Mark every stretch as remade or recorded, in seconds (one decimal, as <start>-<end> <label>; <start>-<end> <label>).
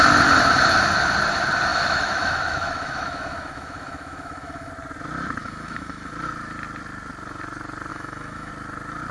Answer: 0.0-1.7 recorded; 1.7-4.7 remade; 4.7-5.4 recorded; 5.4-6.1 remade; 6.1-7.9 recorded; 7.9-8.5 remade; 8.5-9.1 recorded